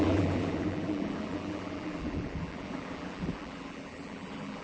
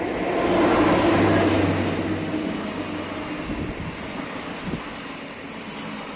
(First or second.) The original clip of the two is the second